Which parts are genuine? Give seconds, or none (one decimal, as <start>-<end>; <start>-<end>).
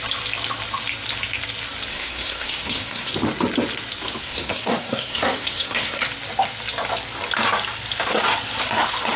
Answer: 0.0-1.9; 3.1-4.2; 6.0-9.2